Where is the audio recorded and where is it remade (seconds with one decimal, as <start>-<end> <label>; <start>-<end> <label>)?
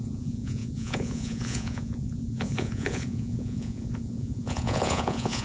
0.0-5.4 remade